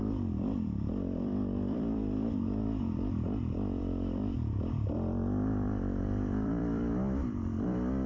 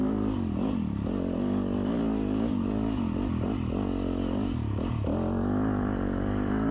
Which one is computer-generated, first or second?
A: first